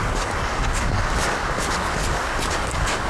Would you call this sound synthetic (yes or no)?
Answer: yes